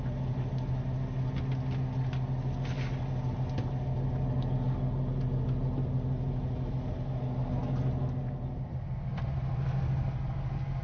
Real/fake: real